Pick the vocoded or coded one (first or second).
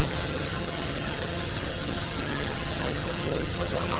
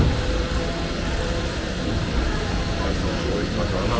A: first